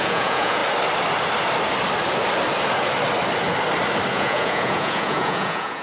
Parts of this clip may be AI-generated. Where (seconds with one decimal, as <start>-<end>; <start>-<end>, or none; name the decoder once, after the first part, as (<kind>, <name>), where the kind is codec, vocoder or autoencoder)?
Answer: 0.0-0.6 (vocoder, Vocos); 4.1-5.8